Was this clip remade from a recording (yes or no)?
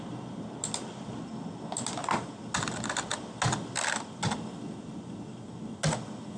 no